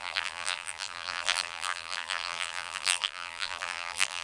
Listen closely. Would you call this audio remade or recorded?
remade